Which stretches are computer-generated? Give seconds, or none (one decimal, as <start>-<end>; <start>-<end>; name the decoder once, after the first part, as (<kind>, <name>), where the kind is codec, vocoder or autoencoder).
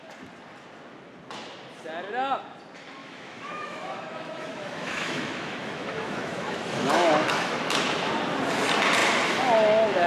3.0-8.1 (autoencoder, DAC-VAE)